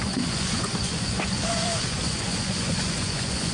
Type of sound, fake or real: fake